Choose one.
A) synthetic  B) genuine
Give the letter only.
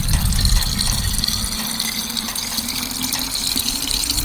B